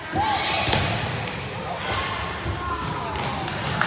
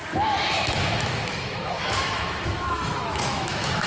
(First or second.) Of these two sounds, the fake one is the second